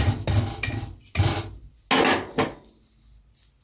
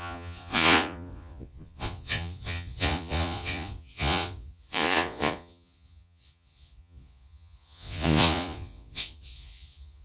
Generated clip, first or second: second